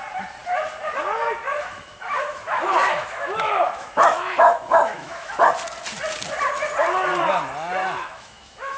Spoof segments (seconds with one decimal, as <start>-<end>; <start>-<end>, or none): 1.5-5.4; 7.8-8.8